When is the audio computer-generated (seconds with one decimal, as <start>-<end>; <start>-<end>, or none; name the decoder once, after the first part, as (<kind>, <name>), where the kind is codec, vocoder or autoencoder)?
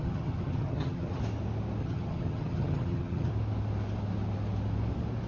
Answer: 0.0-1.2 (vocoder, HiFi-GAN); 1.8-3.3